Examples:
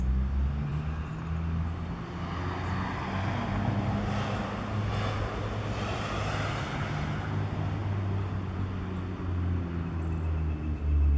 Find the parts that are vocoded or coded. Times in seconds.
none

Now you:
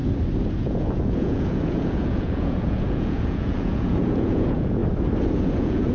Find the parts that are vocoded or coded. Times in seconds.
0.6-4.8 (vocoder, Vocos); 5.4-5.9